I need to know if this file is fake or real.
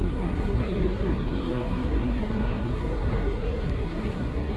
fake